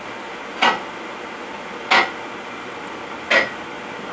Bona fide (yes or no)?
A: yes